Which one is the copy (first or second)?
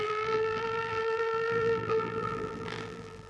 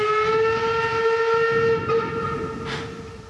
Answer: first